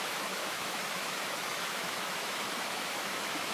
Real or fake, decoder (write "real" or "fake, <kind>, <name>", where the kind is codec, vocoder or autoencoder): fake, autoencoder, DAC-VAE